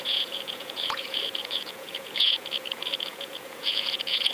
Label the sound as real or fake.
fake